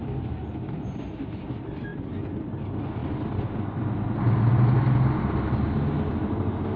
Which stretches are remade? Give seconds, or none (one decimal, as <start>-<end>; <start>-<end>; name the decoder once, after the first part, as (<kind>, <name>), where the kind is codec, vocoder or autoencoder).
1.9-2.6 (vocoder, BigVGAN v2)